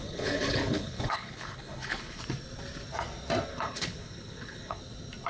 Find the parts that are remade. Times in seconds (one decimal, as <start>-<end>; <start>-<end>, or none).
0.0-2.2; 3.5-4.8